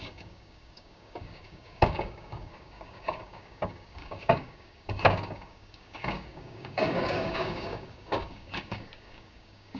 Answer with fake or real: fake